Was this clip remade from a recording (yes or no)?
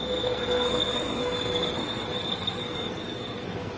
yes